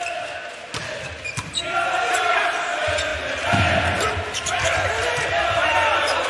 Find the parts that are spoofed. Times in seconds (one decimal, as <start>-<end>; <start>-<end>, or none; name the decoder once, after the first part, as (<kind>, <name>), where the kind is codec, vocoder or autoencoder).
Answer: none